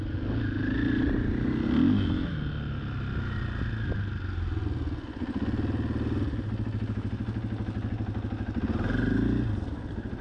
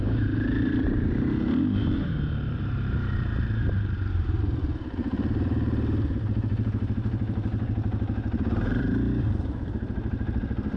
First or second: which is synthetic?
second